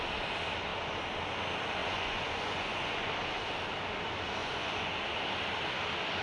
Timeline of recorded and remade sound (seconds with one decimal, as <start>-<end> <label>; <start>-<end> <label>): 0.0-1.8 recorded; 1.8-3.1 remade; 3.1-4.4 recorded; 4.4-4.9 remade; 4.9-6.2 recorded